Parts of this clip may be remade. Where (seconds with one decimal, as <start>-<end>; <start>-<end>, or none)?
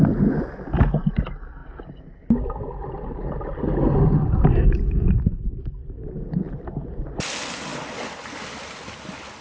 none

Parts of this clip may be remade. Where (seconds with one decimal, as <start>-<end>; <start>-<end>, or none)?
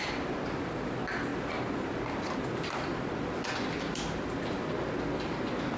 none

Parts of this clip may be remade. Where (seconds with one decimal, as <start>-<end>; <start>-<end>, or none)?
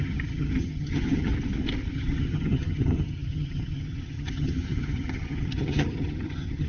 0.0-1.3; 1.9-6.7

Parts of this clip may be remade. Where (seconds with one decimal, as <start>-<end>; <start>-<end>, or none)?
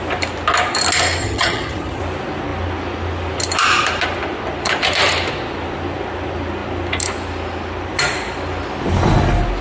1.2-2.0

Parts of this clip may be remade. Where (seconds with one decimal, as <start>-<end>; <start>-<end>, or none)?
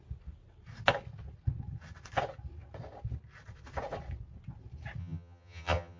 5.0-6.0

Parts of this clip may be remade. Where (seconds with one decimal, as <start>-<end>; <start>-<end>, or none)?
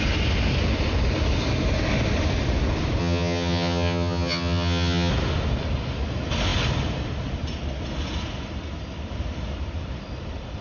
3.0-5.1